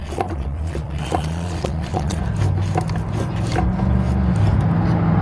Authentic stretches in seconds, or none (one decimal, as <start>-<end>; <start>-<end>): 2.2-5.2